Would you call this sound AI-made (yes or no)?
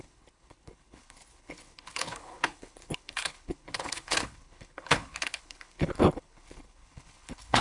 yes